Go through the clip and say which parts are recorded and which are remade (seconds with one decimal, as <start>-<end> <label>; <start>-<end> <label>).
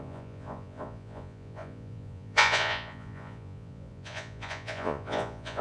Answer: 0.0-5.6 remade